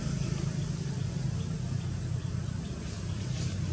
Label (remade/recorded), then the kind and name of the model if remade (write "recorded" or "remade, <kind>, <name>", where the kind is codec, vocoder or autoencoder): remade, vocoder, BigVGAN v2